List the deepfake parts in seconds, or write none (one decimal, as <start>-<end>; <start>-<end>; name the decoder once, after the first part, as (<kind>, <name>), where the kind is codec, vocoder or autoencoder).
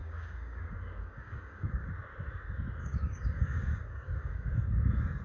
0.0-1.9 (codec, DAC); 2.8-4.5